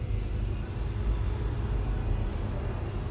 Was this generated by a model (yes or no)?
no